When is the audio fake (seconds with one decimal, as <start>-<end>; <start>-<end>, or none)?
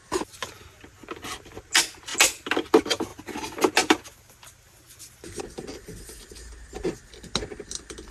none